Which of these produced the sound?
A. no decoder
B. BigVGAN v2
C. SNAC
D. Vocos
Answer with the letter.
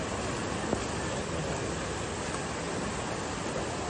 A